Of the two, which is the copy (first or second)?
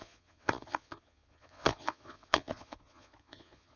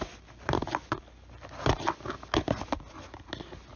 first